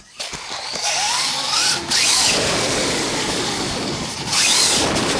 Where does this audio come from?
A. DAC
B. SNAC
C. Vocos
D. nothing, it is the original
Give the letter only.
A